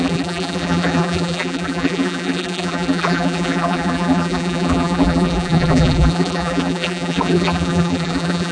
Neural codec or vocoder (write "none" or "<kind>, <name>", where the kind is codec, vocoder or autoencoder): vocoder, BigVGAN v2